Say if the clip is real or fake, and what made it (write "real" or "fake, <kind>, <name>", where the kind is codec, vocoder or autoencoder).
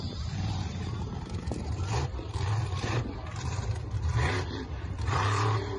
fake, vocoder, BigVGAN v2